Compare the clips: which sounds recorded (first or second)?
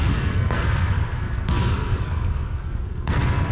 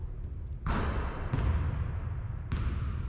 second